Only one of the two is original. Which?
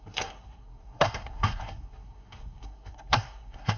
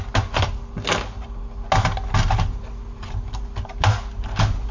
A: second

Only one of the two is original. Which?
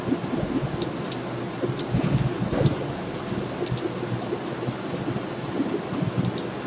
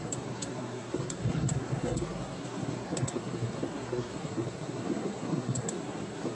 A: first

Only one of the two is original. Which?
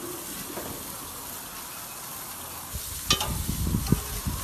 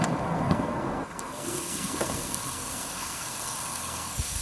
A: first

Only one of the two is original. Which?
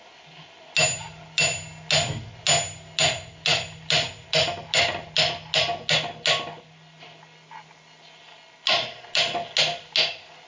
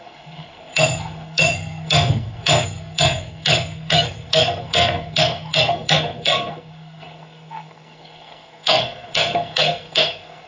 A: first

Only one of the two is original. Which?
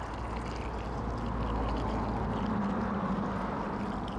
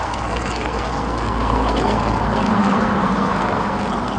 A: first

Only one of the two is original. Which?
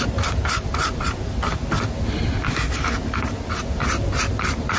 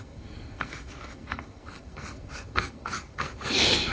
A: first